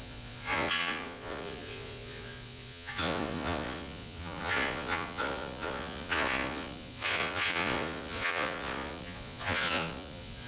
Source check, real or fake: fake